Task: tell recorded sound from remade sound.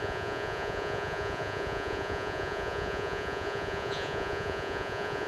remade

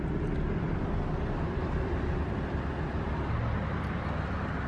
recorded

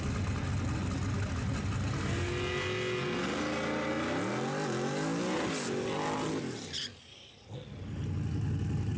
recorded